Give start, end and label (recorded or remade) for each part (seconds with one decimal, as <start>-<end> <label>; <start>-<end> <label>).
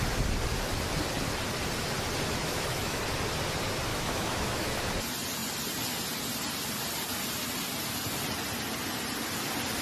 0.0-2.4 recorded; 2.4-3.0 remade; 3.0-3.9 recorded; 3.9-4.8 remade; 4.8-9.8 recorded